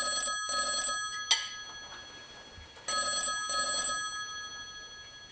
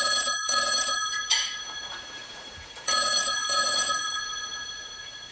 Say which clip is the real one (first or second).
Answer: first